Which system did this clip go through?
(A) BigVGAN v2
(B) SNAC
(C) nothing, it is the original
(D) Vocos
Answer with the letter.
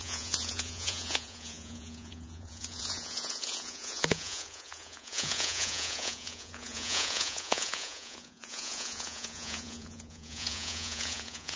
D